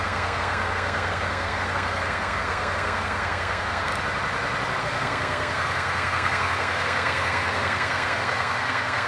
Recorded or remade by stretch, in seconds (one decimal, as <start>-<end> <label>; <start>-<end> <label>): 0.0-3.9 remade; 3.9-4.8 recorded; 4.8-9.1 remade